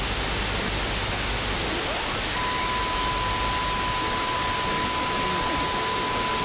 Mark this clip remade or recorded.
recorded